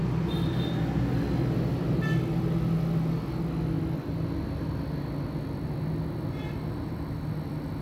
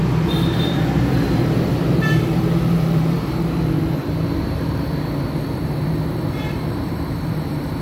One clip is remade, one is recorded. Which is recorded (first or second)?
first